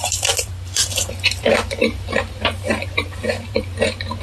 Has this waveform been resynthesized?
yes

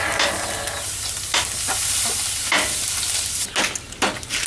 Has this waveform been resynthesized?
no